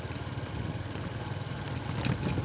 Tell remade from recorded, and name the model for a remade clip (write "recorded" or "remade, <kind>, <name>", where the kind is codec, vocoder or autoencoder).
recorded